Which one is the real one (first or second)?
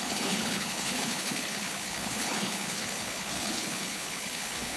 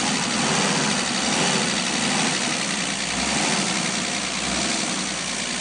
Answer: second